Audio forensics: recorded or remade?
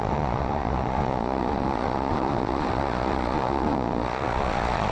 remade